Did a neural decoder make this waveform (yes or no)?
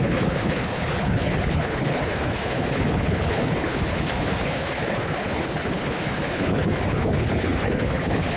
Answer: yes